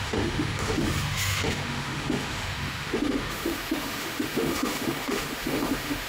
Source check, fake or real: fake